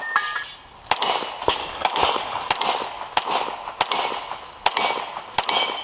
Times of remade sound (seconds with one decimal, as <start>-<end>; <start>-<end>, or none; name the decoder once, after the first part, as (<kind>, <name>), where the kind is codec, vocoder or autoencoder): 1.6-2.5 (codec, DAC)